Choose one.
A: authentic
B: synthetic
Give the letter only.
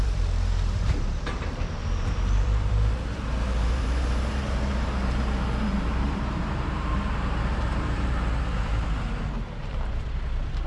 B